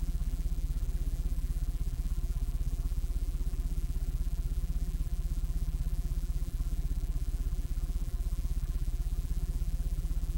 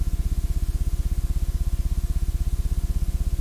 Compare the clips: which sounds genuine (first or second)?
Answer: second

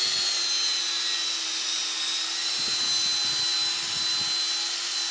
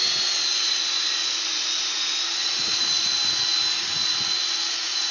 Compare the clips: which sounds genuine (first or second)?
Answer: first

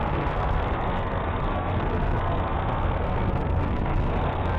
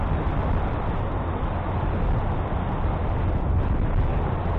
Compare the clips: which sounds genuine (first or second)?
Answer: second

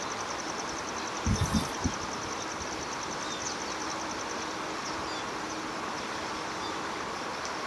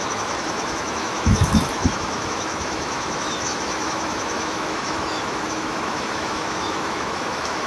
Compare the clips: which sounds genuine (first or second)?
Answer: first